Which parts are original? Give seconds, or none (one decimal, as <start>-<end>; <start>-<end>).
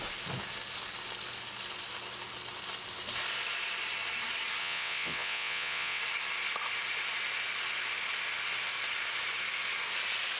0.0-4.6; 6.0-10.4